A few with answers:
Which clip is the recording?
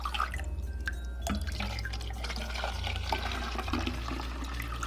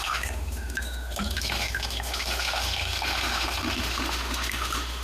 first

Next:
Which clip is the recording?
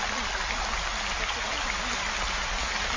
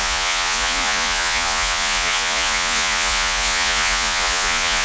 first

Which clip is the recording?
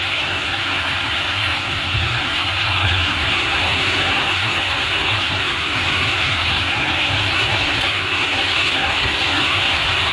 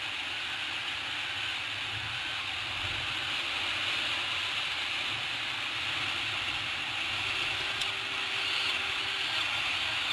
second